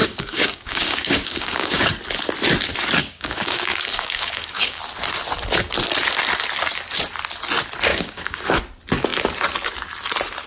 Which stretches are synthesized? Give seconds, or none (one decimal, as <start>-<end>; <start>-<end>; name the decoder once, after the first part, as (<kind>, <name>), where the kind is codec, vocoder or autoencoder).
0.0-1.9 (codec, DAC); 3.0-4.8; 7.9-8.6